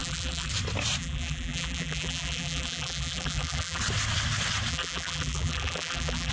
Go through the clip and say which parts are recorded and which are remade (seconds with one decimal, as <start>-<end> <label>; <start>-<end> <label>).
0.0-0.5 remade; 0.5-1.0 recorded; 1.0-3.8 remade; 3.8-4.7 recorded; 4.7-6.3 remade